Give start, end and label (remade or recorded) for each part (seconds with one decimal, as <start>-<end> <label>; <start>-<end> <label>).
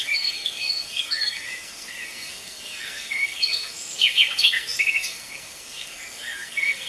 0.0-6.9 remade